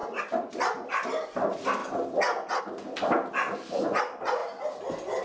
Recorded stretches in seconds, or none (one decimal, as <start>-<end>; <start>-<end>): 0.0-5.2